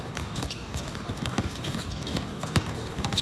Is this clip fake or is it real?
fake